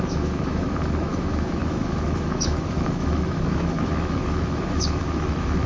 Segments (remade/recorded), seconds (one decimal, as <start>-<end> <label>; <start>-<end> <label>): 0.0-5.7 remade